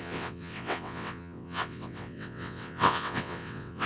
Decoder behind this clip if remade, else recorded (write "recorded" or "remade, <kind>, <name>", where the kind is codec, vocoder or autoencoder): remade, vocoder, WaveNeXt